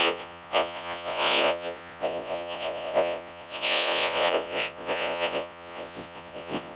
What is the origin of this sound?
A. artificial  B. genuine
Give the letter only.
A